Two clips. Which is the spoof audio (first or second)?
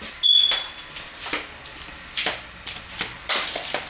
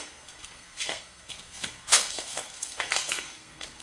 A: second